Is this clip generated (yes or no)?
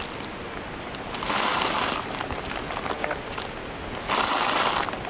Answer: no